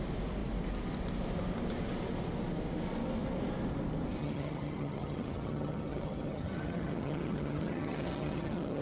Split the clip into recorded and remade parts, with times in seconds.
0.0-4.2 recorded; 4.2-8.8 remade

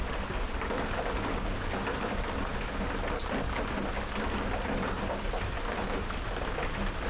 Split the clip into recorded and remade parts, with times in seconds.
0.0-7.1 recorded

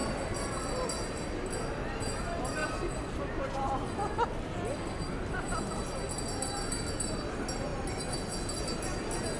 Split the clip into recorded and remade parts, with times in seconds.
0.0-0.6 remade; 0.6-9.4 recorded

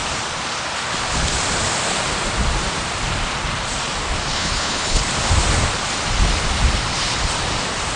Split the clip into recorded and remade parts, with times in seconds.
0.0-4.3 recorded; 4.3-5.0 remade; 5.0-8.0 recorded

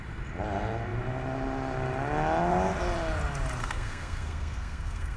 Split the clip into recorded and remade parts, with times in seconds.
0.0-3.6 recorded; 3.6-5.2 remade

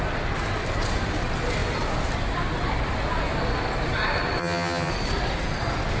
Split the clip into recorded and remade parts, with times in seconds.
0.0-4.4 recorded; 4.4-4.9 remade; 4.9-6.0 recorded

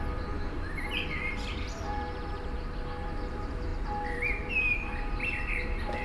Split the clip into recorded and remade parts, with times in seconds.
0.0-6.0 remade

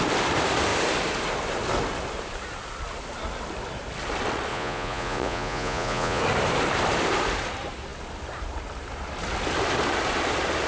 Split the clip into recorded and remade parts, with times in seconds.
0.0-4.5 recorded; 4.5-6.2 remade; 6.2-10.7 recorded